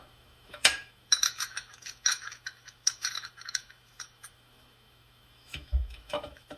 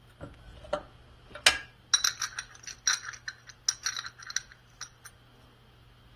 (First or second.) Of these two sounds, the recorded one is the second